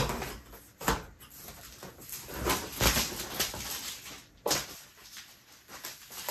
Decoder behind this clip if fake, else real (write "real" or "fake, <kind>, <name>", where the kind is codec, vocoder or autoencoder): real